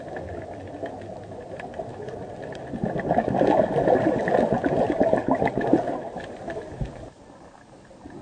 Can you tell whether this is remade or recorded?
recorded